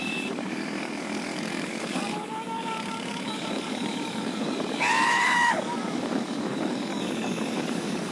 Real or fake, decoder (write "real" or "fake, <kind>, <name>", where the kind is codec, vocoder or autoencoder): fake, codec, DAC